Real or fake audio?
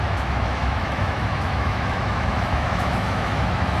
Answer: fake